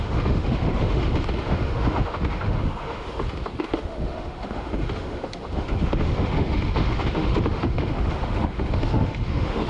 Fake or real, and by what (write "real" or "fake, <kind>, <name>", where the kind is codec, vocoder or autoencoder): fake, autoencoder, DAC-VAE